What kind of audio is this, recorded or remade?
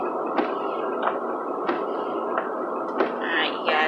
recorded